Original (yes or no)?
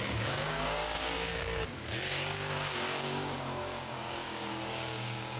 no